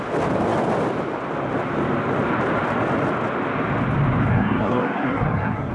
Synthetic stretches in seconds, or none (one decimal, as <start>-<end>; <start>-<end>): 4.3-5.7